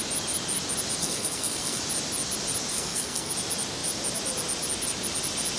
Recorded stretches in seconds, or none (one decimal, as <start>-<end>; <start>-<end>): 0.0-1.0; 1.8-2.7; 3.3-5.6